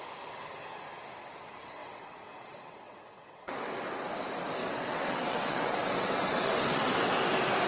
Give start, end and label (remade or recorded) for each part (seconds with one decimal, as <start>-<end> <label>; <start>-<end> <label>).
0.0-1.8 recorded; 1.8-3.5 remade; 3.5-4.6 recorded; 4.6-7.1 remade; 7.1-7.7 recorded